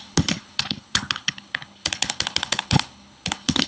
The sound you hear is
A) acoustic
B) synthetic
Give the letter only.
B